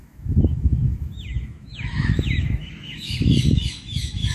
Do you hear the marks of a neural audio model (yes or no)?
yes